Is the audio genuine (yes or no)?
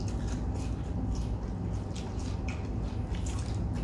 yes